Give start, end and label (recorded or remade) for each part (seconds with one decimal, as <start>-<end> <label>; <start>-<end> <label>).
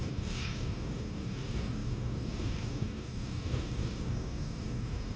0.0-5.2 remade